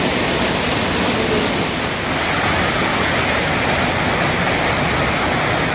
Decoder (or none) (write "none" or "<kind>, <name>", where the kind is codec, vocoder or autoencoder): none